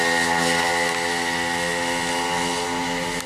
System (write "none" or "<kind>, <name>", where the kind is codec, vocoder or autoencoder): none